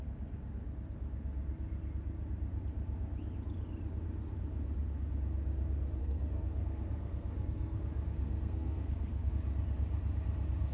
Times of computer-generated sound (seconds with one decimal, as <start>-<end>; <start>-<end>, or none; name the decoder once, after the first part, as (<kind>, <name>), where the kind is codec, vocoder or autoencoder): 6.0-9.3 (codec, SNAC)